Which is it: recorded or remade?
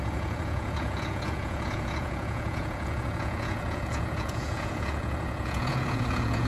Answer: remade